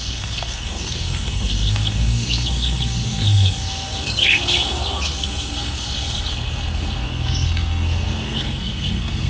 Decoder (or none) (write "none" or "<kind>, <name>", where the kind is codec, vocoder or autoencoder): codec, SNAC